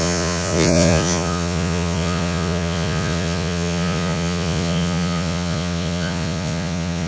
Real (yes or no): no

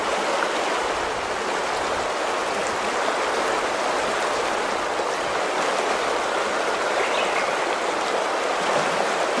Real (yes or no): yes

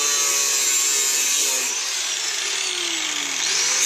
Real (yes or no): yes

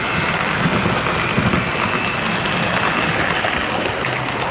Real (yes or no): yes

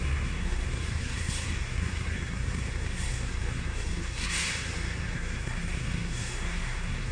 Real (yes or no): no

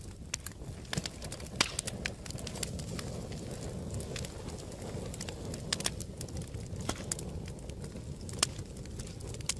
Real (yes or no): yes